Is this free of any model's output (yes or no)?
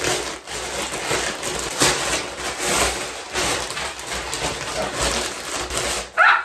yes